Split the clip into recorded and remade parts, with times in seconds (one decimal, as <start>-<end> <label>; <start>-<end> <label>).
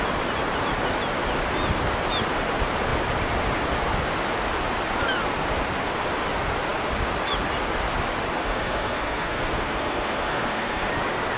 0.0-8.4 recorded; 8.4-10.9 remade; 10.9-11.4 recorded